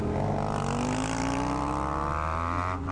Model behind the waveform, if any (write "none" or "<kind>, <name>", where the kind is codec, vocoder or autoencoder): none